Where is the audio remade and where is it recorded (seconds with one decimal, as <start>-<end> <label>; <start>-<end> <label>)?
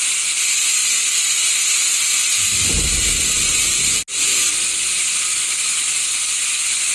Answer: 0.0-6.9 recorded